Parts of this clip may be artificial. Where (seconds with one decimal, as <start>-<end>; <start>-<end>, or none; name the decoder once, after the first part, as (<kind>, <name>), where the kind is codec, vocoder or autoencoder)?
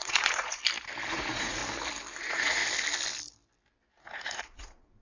0.0-0.6 (vocoder, Vocos); 1.1-1.6; 2.2-2.6; 3.9-5.0